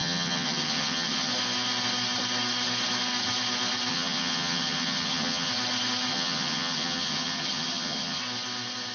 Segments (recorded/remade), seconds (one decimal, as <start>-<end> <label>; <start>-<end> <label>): 0.0-1.3 remade; 1.3-3.9 recorded; 3.9-5.5 remade; 5.5-6.1 recorded; 6.1-8.2 remade; 8.2-8.9 recorded